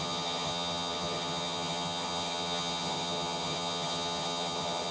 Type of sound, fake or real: fake